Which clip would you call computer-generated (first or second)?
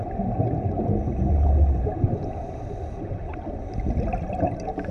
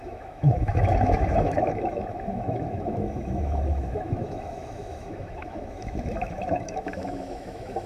second